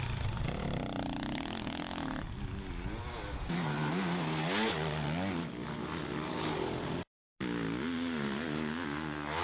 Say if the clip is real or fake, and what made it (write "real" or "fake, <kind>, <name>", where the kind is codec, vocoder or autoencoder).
real